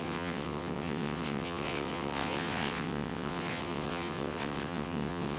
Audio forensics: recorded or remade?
remade